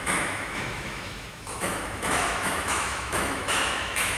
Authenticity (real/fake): fake